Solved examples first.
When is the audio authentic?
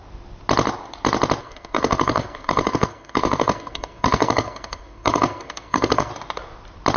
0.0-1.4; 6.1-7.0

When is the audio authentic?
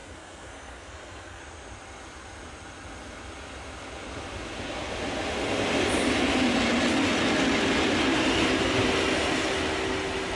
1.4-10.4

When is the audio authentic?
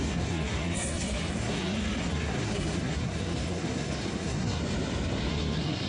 4.6-5.3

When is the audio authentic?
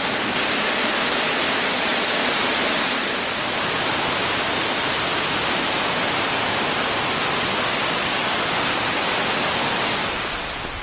0.0-10.8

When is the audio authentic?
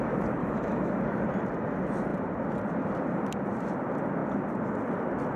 0.0-0.4; 1.0-5.4